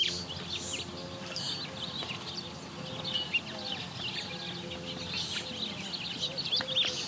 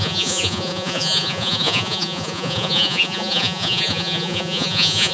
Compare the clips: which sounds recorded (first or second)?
first